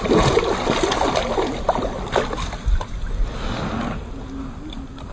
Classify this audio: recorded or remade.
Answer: recorded